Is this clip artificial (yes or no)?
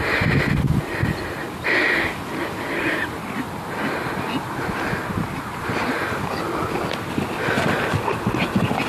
no